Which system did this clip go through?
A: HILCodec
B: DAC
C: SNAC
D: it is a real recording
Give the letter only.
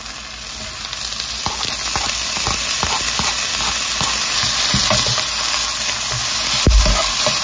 D